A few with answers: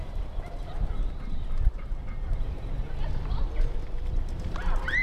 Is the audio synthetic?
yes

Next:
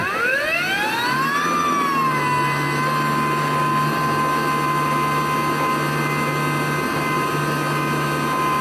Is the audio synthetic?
no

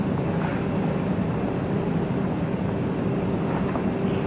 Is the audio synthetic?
no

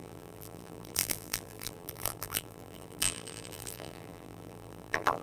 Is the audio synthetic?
yes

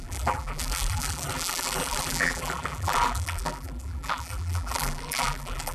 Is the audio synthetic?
yes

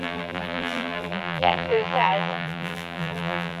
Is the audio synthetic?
yes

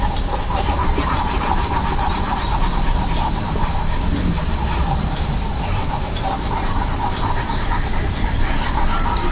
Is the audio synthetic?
yes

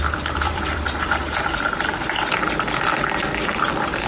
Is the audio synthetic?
yes